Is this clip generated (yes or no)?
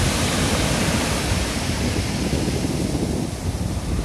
yes